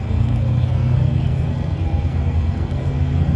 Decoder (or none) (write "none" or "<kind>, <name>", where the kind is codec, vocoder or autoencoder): codec, SNAC